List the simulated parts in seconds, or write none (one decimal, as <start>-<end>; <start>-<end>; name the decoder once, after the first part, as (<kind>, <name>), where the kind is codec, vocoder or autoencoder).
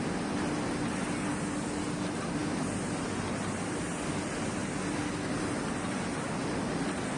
none